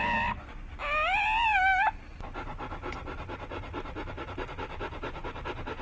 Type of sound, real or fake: real